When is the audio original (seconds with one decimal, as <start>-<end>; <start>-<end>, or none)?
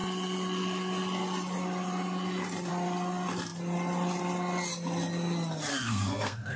0.0-5.7